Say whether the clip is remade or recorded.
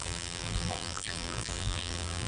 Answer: remade